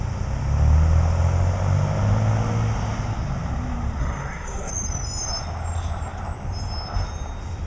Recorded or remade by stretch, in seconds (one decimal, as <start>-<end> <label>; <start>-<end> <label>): 0.0-4.0 recorded; 4.0-4.7 remade; 4.7-7.7 recorded